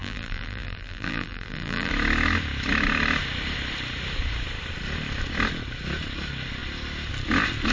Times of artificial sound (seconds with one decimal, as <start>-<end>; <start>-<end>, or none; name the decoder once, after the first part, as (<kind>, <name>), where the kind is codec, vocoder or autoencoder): 0.0-1.9 (vocoder, BigVGAN v2)